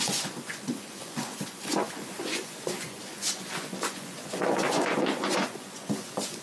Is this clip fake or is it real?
fake